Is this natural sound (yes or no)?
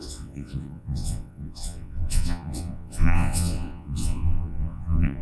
no